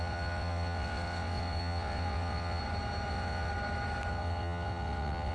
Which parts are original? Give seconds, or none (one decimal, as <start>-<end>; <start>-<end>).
2.6-3.1; 3.5-4.1